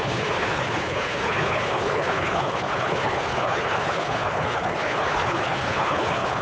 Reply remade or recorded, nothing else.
remade